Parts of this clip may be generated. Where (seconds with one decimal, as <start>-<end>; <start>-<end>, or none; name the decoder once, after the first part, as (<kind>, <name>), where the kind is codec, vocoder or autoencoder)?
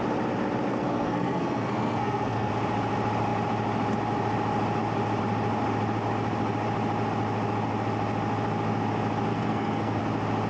0.7-2.5 (codec, SNAC); 9.3-10.0